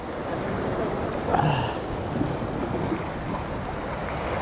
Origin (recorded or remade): recorded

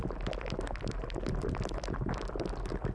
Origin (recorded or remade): recorded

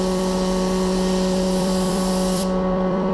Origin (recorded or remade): remade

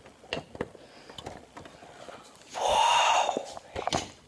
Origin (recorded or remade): recorded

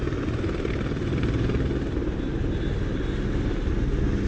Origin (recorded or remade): recorded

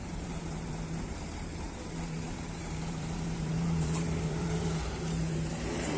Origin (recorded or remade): remade